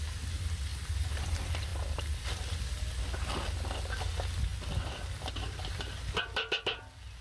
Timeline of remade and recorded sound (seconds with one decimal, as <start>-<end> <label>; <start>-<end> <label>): 0.0-7.2 recorded